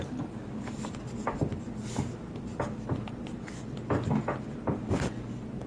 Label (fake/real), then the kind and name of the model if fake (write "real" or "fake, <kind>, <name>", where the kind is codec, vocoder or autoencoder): real